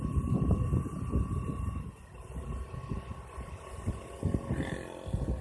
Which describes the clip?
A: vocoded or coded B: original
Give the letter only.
B